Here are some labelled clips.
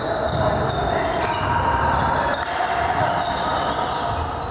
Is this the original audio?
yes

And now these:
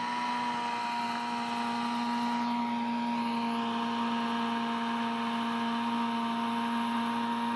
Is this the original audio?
yes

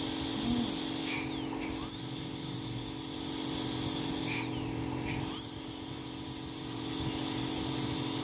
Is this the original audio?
yes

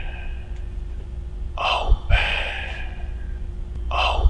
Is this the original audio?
no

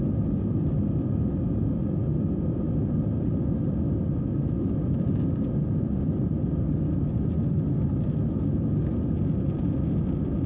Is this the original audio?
yes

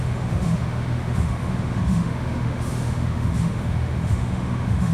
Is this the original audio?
no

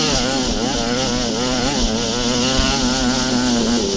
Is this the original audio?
yes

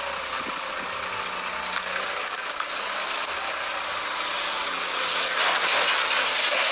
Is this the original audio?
yes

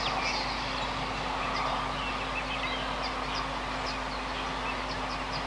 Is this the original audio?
yes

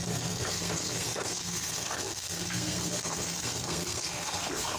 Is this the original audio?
no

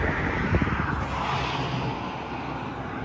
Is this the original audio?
yes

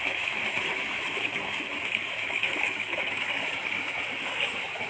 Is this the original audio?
no